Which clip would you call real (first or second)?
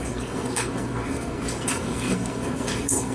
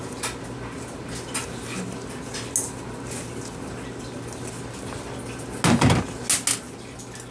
second